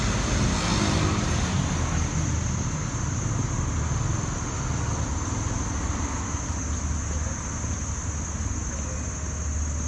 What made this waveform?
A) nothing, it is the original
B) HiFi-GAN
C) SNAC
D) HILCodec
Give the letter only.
A